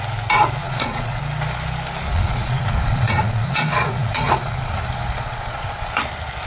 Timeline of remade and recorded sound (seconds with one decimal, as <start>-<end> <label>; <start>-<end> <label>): 0.0-0.6 recorded; 0.6-1.2 remade; 1.2-2.1 recorded; 2.1-5.9 remade; 5.9-6.5 recorded